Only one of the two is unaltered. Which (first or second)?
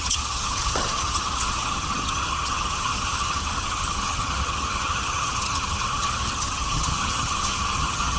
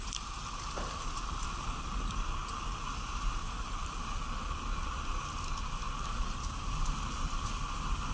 second